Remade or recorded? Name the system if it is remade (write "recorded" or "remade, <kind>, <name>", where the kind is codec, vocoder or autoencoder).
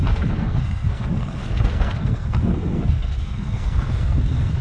remade, codec, SNAC